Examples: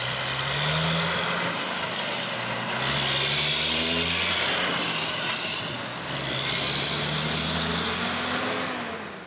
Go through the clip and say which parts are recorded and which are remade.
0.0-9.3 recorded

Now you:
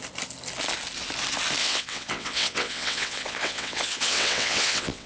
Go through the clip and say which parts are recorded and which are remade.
0.0-1.6 recorded; 1.6-5.1 remade

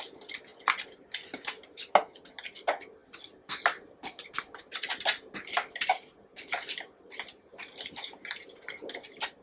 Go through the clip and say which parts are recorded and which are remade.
0.0-9.4 recorded

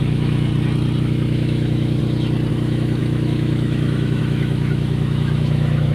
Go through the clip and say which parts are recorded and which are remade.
0.0-0.5 remade; 0.5-1.0 recorded; 1.0-2.0 remade; 2.0-2.5 recorded; 2.5-5.9 remade

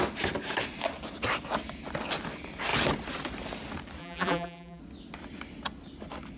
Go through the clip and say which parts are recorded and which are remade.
0.0-4.0 recorded; 4.0-4.8 remade; 4.8-6.4 recorded